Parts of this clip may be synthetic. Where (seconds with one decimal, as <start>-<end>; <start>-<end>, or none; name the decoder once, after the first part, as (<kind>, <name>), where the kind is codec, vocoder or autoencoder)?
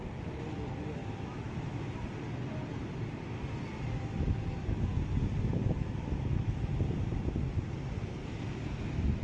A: 1.0-1.8 (autoencoder, DAC-VAE); 5.5-6.7